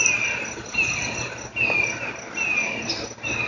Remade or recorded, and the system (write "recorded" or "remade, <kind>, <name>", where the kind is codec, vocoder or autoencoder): recorded